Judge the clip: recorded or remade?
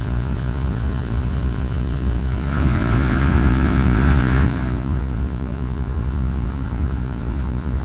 remade